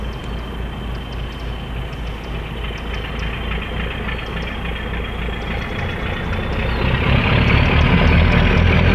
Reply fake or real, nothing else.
real